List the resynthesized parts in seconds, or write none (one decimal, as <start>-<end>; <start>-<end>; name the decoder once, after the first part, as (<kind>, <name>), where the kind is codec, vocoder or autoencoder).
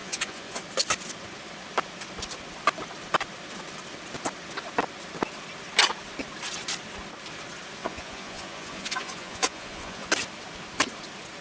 0.0-0.6 (vocoder, Vocos); 7.8-10.1